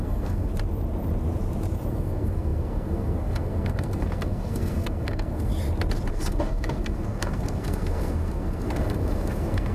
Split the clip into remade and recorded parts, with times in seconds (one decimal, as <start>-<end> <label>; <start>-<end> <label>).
0.0-0.5 remade; 0.5-1.9 recorded; 1.9-5.5 remade; 5.5-6.1 recorded; 6.1-9.7 remade